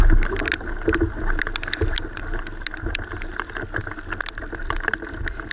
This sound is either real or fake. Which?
real